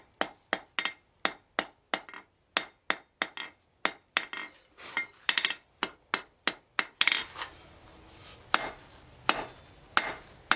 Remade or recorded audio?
recorded